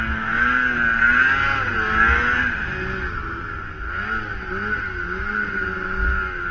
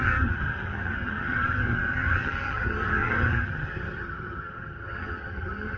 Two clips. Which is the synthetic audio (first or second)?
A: second